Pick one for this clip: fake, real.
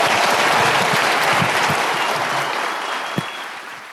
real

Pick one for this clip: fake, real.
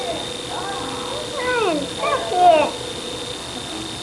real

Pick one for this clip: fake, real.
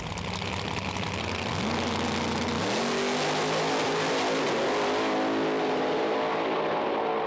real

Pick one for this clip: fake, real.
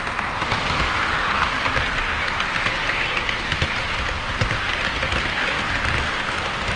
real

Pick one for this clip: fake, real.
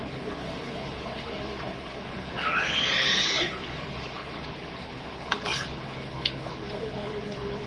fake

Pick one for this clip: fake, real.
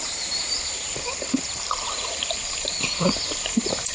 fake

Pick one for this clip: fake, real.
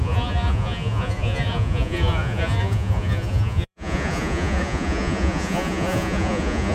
fake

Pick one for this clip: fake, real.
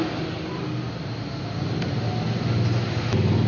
real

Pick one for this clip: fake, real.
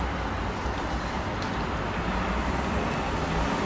real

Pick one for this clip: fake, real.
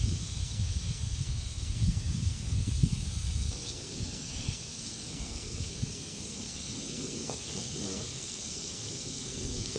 fake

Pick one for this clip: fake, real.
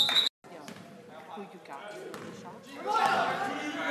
real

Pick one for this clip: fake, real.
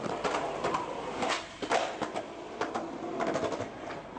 real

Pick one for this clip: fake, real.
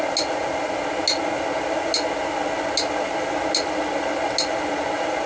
real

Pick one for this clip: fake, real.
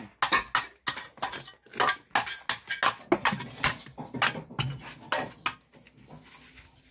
real